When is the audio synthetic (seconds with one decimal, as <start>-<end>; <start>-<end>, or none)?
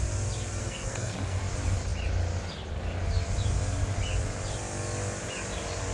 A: 0.6-1.4